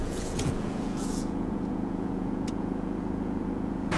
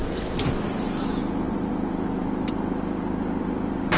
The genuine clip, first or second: second